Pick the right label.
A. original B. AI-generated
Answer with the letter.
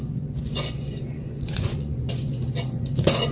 B